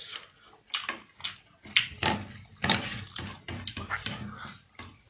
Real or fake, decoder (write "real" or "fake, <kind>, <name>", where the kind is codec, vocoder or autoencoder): real